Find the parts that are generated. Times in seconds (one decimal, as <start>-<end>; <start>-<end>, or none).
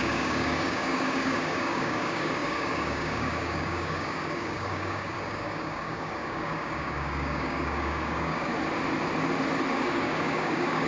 0.0-8.5; 9.7-10.9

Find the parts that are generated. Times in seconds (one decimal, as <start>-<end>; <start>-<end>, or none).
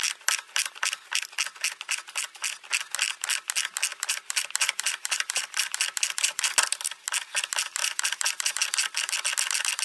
0.0-1.4; 3.9-5.7; 7.8-8.5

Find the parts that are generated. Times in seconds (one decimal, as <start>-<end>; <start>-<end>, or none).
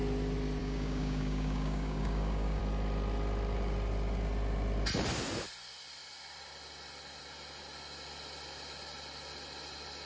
0.6-2.6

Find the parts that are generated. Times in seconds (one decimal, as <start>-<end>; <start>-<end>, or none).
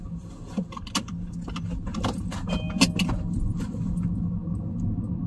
none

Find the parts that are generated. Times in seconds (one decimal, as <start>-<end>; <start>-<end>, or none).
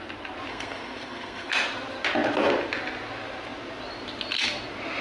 0.5-1.5